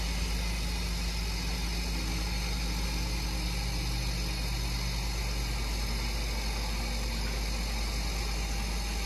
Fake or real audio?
real